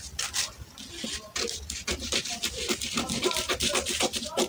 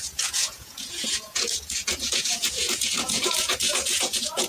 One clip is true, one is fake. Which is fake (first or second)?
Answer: second